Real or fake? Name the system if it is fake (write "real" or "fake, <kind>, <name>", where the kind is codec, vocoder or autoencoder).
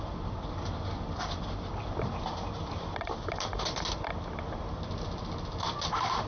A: fake, vocoder, BigVGAN v2